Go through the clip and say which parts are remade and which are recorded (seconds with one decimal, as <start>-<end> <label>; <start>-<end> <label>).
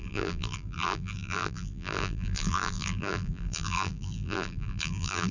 0.0-5.3 remade